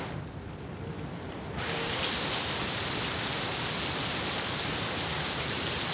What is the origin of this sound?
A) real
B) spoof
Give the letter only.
A